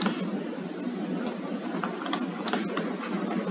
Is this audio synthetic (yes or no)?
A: no